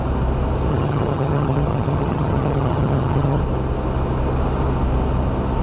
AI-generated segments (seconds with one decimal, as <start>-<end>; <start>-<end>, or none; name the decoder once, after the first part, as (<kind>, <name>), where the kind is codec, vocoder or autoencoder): 0.7-3.4 (vocoder, HiFi-GAN)